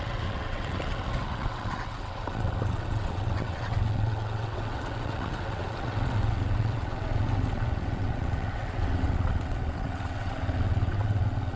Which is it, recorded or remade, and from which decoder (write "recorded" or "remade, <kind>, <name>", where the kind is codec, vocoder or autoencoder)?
remade, vocoder, WaveNeXt